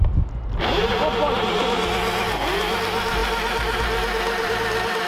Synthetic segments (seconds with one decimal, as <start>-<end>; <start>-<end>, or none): none